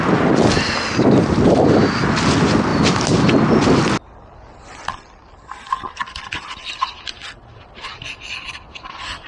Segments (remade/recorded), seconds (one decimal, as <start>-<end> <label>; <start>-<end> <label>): 0.0-9.3 recorded